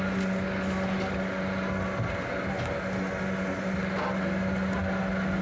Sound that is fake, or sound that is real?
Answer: real